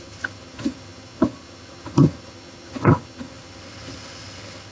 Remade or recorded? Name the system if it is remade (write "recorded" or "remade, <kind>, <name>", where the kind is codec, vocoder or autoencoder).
remade, vocoder, HiFi-GAN